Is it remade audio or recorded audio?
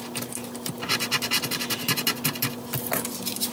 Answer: recorded